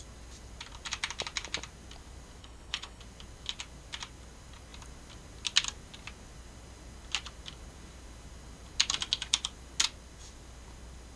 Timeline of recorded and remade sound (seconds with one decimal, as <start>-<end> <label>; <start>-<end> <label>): 0.0-2.4 recorded; 2.4-3.0 remade; 3.0-11.2 recorded